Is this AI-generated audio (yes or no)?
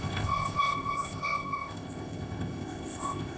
yes